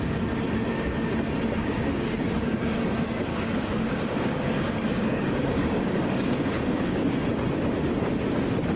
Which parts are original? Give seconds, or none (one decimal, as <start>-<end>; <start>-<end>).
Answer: 0.0-1.6; 2.8-3.3; 7.1-8.8